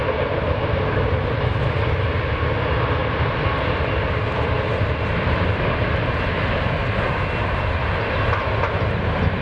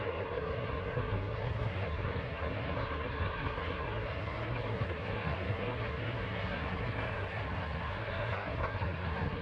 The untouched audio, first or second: first